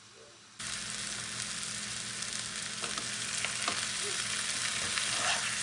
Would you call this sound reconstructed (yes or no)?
no